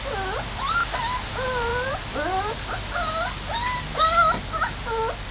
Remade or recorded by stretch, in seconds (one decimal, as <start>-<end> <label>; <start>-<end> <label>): 0.0-5.3 recorded